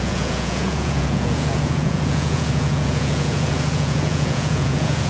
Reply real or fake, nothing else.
fake